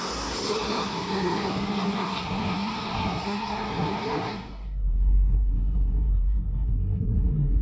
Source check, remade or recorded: remade